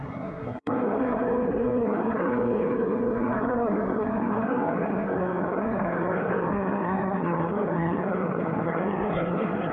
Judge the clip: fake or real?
fake